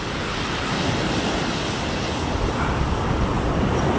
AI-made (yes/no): no